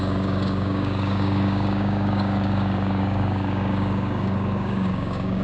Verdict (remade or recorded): remade